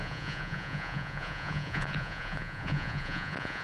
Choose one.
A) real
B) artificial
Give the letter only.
B